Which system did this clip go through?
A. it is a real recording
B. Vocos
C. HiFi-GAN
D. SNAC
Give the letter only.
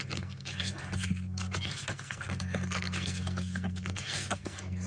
D